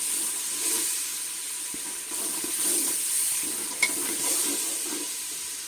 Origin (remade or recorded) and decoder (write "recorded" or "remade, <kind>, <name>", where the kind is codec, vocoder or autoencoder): recorded